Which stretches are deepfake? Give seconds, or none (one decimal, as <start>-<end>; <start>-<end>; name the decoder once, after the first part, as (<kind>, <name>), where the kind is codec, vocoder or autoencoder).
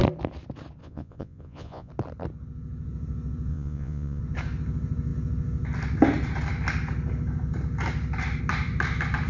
0.8-1.9 (vocoder, Vocos); 3.5-4.2